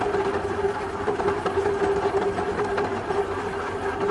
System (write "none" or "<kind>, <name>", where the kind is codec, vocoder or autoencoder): vocoder, BigVGAN v2